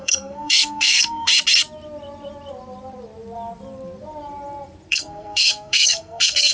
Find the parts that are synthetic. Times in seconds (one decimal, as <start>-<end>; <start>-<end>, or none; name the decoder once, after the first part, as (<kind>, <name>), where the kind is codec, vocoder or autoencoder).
0.0-1.3 (codec, SNAC); 4.9-6.5